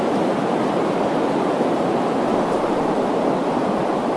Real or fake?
real